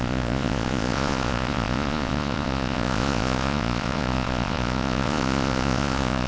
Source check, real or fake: fake